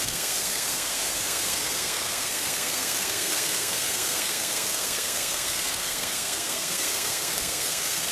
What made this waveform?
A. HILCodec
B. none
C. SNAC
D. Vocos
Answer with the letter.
C